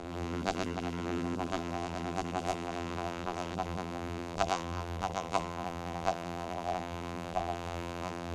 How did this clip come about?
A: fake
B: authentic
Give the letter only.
A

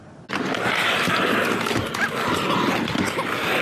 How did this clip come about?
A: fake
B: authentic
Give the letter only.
B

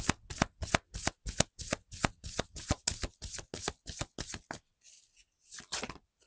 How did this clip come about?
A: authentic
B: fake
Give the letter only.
A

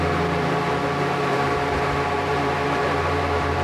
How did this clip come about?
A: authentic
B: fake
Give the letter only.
B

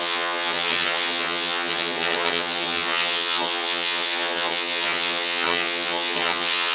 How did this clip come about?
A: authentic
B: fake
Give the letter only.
B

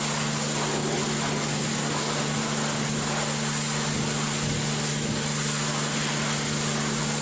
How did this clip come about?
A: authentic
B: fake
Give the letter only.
A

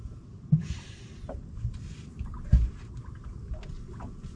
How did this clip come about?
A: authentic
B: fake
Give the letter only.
A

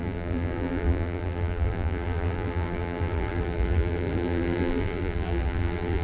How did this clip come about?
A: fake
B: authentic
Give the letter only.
A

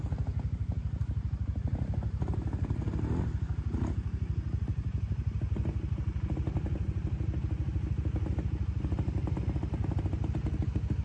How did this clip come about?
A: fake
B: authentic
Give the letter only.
B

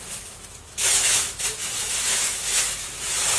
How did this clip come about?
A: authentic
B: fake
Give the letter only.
B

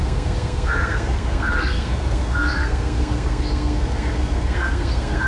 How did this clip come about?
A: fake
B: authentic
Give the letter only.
A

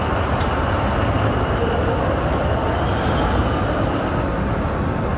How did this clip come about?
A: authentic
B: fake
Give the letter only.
A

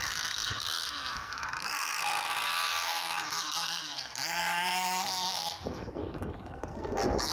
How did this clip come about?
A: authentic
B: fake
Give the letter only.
B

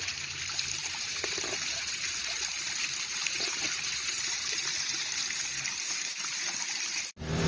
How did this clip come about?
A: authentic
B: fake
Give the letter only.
B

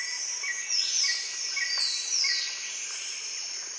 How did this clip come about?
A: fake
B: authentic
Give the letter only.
B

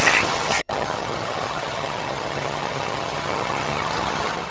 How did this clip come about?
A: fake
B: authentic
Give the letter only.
A